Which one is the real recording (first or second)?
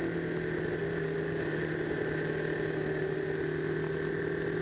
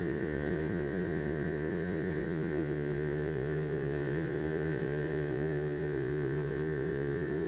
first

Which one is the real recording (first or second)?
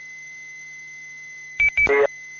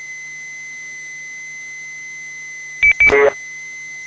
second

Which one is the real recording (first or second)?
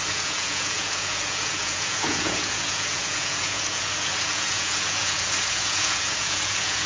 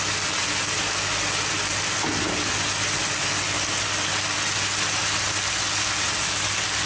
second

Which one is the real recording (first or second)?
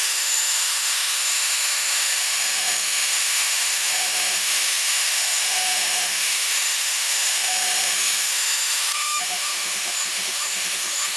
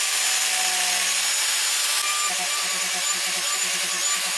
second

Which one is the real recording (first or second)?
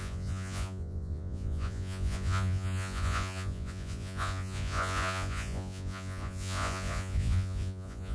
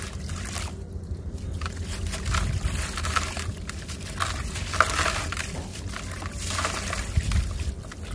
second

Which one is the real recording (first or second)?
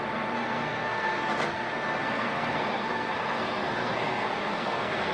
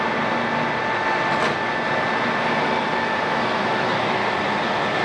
second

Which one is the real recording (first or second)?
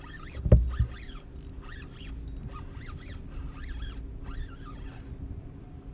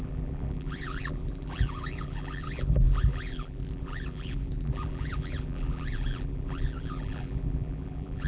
first